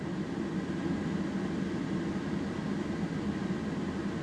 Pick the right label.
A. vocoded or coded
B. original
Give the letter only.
B